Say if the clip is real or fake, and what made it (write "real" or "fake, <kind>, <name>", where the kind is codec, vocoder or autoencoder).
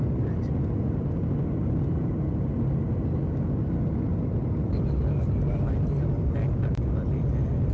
real